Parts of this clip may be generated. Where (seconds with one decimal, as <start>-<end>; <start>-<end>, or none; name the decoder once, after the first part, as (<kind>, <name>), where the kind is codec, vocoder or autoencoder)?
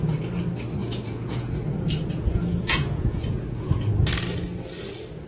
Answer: 0.8-3.9 (vocoder, Vocos)